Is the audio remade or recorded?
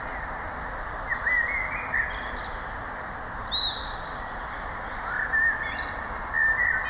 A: recorded